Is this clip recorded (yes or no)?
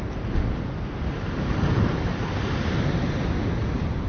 yes